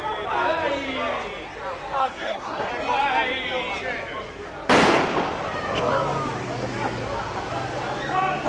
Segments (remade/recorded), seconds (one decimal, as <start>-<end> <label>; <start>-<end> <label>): 0.0-2.0 recorded; 2.0-2.7 remade; 2.7-8.5 recorded